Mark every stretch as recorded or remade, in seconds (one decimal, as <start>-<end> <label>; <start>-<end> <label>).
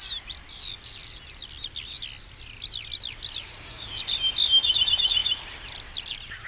0.0-3.4 recorded; 3.4-4.0 remade; 4.0-6.5 recorded